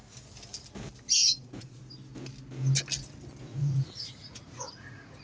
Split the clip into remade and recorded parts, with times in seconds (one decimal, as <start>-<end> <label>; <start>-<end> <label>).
0.0-1.2 recorded; 1.2-1.8 remade; 1.8-3.5 recorded; 3.5-5.2 remade